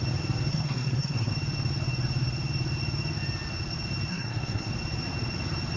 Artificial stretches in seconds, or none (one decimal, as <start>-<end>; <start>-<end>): 0.5-1.3; 4.1-4.7